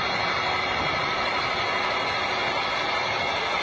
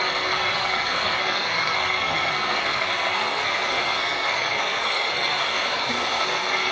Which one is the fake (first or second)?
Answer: second